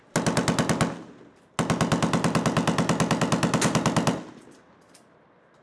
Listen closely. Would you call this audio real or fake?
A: real